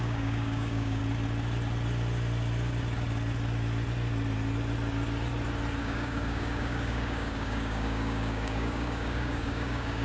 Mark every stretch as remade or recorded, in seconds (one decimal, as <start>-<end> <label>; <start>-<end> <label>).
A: 0.0-1.0 remade; 1.0-5.8 recorded; 5.8-10.0 remade